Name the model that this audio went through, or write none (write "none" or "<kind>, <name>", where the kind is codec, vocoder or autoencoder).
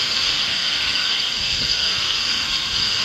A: codec, SNAC